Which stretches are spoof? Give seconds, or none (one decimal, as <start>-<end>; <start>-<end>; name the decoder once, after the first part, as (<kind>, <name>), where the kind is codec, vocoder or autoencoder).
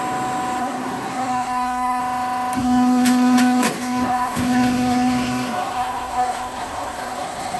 0.6-2.0 (codec, SNAC); 2.6-7.6